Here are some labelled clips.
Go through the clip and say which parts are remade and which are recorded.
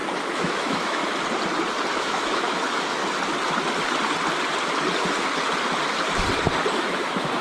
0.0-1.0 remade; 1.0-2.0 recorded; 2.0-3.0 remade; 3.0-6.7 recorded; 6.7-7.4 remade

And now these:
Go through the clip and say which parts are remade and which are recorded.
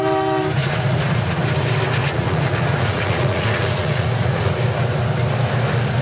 0.0-0.6 recorded; 0.6-1.4 remade; 1.4-2.0 recorded; 2.0-4.5 remade; 4.5-6.0 recorded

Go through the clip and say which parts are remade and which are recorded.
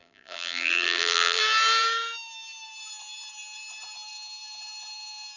0.0-1.4 remade; 1.4-5.4 recorded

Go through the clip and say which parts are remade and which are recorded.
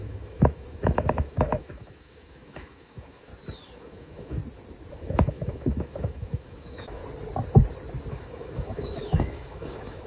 0.0-3.3 remade; 3.3-3.8 recorded; 3.8-4.4 remade; 4.4-4.9 recorded; 4.9-7.0 remade; 7.0-8.1 recorded; 8.1-10.1 remade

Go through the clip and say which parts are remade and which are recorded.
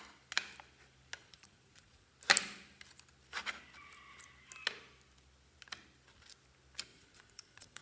0.0-1.2 recorded; 1.2-2.1 remade; 2.1-6.9 recorded; 6.9-7.8 remade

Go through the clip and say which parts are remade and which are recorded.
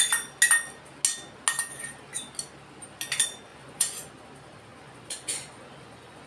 0.0-3.5 recorded; 3.5-4.1 remade; 4.1-4.7 recorded; 4.7-6.3 remade